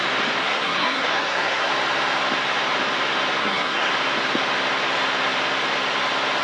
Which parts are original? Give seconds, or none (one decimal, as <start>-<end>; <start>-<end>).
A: 0.0-0.4; 1.7-3.4; 3.9-6.4

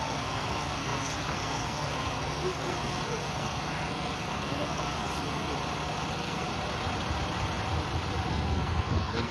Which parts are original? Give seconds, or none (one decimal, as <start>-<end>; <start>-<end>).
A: 5.5-6.1; 6.5-8.3